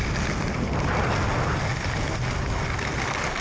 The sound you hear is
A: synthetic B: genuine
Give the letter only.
B